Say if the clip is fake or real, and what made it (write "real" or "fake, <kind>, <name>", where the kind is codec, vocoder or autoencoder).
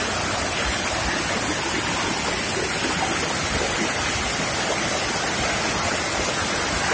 real